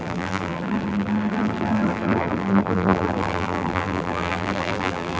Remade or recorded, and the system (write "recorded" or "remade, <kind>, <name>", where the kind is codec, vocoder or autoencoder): remade, vocoder, BigVGAN v2